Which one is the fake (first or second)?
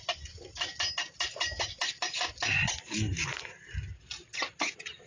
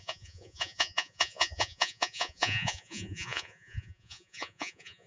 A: second